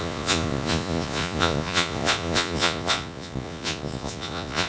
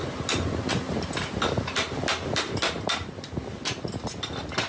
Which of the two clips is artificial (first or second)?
first